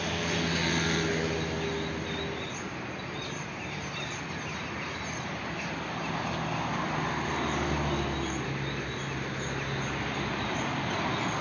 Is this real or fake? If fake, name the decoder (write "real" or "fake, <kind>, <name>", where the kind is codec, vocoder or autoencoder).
real